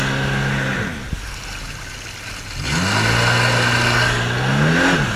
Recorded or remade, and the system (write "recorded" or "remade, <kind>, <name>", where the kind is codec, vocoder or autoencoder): recorded